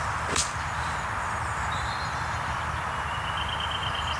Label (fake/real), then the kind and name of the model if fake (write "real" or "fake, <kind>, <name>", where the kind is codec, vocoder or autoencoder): real